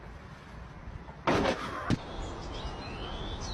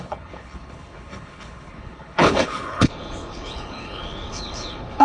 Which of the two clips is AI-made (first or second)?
second